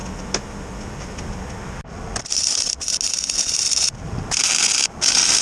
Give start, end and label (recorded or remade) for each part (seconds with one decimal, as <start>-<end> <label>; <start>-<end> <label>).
0.0-5.4 recorded